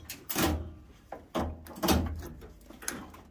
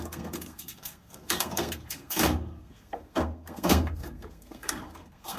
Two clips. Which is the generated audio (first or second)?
second